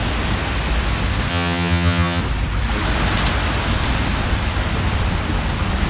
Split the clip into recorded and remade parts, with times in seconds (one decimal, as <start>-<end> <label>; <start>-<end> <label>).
0.0-1.3 recorded; 1.3-2.2 remade; 2.2-5.9 recorded

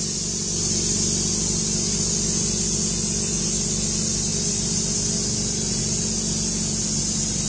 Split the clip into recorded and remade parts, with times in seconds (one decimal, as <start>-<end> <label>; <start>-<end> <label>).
0.0-7.5 recorded

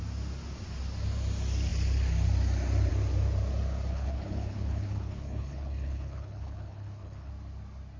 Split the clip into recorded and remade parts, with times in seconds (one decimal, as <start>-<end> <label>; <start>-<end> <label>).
0.0-3.9 recorded; 3.9-7.3 remade; 7.3-8.0 recorded

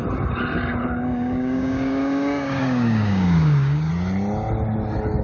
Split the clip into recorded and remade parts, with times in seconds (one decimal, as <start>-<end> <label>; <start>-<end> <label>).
0.0-0.8 recorded; 0.8-3.9 remade; 3.9-5.2 recorded

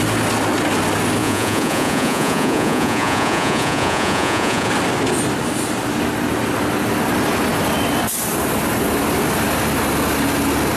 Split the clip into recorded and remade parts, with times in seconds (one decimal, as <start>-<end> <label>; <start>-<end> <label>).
0.0-1.2 recorded; 1.2-4.7 remade; 4.7-10.8 recorded